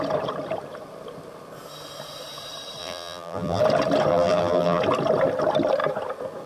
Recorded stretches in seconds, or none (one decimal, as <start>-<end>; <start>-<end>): 0.0-2.8; 3.6-4.1; 4.8-6.5